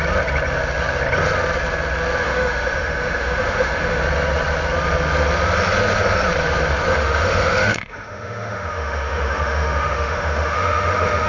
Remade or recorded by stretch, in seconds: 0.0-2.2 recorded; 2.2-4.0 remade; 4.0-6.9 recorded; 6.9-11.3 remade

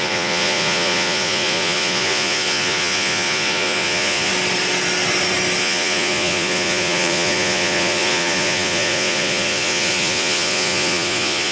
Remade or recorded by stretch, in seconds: 0.0-4.3 remade; 4.3-5.6 recorded; 5.6-11.5 remade

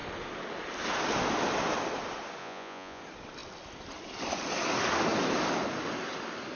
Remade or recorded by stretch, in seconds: 0.0-2.4 recorded; 2.4-3.0 remade; 3.0-6.6 recorded

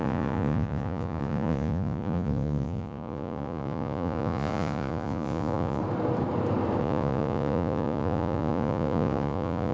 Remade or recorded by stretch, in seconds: 0.0-5.8 remade; 5.8-6.8 recorded; 6.8-9.7 remade

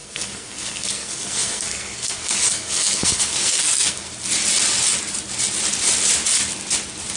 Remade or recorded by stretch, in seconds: 0.0-4.1 remade; 4.1-7.2 recorded